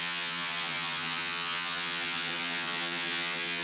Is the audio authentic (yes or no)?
no